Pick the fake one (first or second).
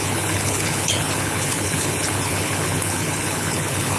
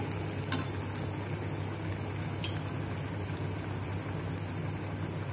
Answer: first